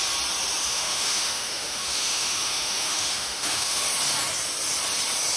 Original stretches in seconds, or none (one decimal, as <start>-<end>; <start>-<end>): 0.0-0.6; 3.8-5.4